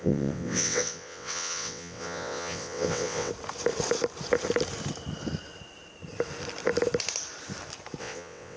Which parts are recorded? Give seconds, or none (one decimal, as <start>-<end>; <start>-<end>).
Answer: 3.3-8.0